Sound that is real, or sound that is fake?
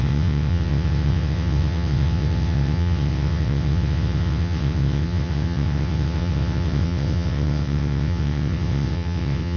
fake